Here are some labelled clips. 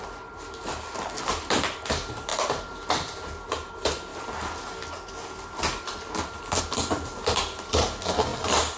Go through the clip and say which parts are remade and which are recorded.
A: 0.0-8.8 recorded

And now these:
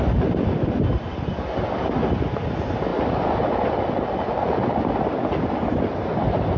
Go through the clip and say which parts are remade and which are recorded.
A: 0.0-6.6 recorded

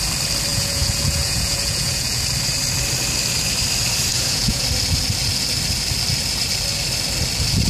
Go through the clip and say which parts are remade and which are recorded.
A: 0.0-0.5 recorded; 0.5-2.2 remade; 2.2-4.1 recorded; 4.1-4.6 remade; 4.6-7.7 recorded

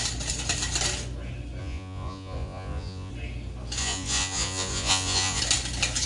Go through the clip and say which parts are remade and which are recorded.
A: 0.0-1.6 recorded; 1.6-3.1 remade; 3.1-3.8 recorded; 3.8-5.4 remade; 5.4-6.1 recorded